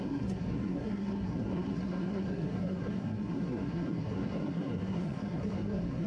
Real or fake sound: fake